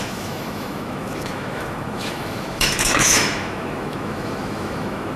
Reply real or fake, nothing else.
fake